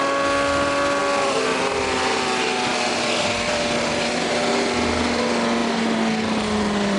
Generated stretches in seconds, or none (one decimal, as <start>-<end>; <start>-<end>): none